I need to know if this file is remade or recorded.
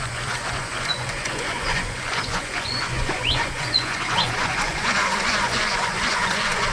remade